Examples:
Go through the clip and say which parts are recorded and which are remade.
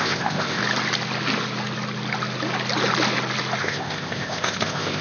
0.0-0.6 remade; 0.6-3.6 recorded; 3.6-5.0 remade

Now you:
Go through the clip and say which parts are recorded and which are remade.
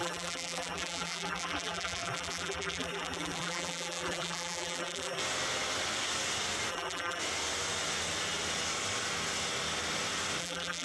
0.0-5.2 remade; 5.2-6.7 recorded; 6.7-7.2 remade; 7.2-10.4 recorded; 10.4-10.8 remade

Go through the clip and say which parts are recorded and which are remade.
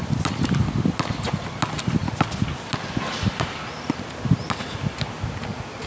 0.0-5.9 recorded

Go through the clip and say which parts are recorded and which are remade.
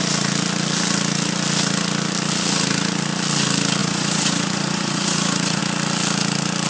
0.0-3.8 recorded; 3.8-5.6 remade; 5.6-6.7 recorded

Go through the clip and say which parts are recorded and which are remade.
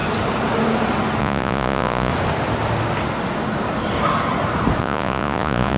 0.0-1.2 recorded; 1.2-2.1 remade; 2.1-4.8 recorded; 4.8-5.8 remade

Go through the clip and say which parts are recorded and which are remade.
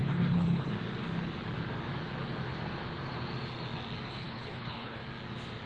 0.0-0.7 remade; 0.7-4.1 recorded; 4.1-5.0 remade; 5.0-5.7 recorded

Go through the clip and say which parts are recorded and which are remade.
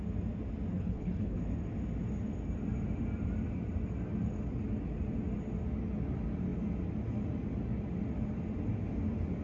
0.0-0.7 recorded; 0.7-1.4 remade; 1.4-9.4 recorded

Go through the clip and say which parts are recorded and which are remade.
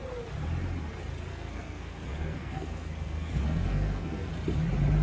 0.0-1.3 recorded; 1.3-4.3 remade; 4.3-5.0 recorded